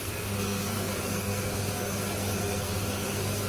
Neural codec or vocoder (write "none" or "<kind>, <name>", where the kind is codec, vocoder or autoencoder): codec, SNAC